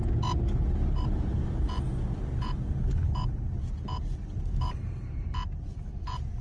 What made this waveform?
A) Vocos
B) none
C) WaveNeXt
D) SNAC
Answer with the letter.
B